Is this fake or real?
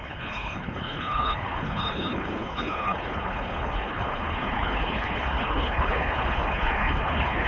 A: fake